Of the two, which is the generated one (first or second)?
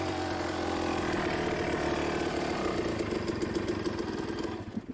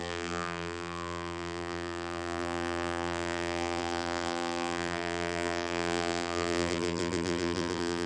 second